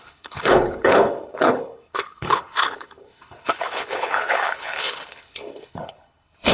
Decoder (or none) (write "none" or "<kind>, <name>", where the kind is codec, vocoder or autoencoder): codec, HILCodec